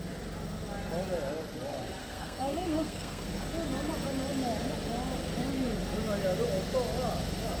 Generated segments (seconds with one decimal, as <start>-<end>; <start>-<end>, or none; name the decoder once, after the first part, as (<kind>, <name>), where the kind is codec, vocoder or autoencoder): 2.0-3.3 (codec, SNAC)